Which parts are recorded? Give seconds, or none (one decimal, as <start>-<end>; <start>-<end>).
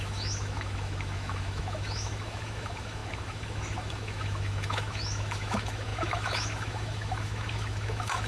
none